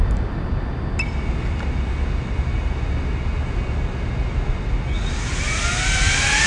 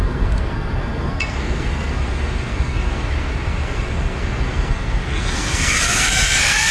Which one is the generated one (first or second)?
second